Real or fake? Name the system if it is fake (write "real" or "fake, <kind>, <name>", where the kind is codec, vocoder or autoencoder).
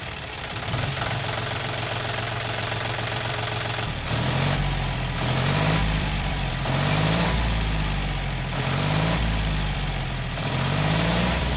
fake, vocoder, BigVGAN v2